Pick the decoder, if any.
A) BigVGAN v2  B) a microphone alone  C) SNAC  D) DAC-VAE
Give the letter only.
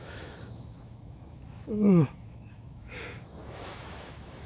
D